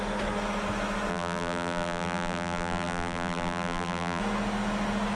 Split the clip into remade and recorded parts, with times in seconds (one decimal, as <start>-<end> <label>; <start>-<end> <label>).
0.0-1.1 recorded; 1.1-4.2 remade; 4.2-5.1 recorded